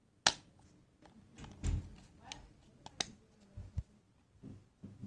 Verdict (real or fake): real